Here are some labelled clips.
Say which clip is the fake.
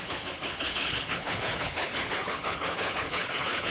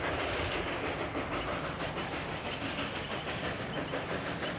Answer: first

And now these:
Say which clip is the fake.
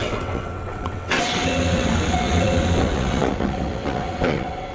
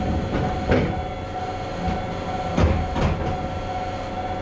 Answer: first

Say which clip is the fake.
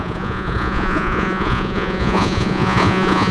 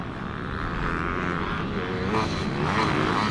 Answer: first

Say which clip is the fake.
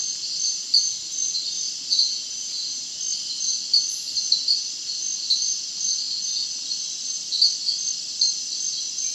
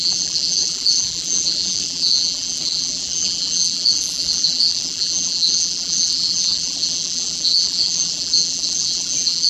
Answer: second